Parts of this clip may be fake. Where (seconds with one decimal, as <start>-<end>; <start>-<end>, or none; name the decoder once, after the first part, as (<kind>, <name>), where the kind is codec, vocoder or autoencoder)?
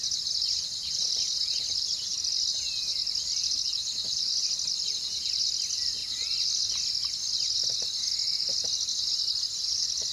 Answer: 0.8-1.7 (vocoder, BigVGAN v2)